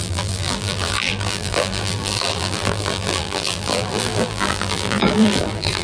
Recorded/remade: remade